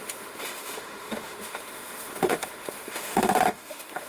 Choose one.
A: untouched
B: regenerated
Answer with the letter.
B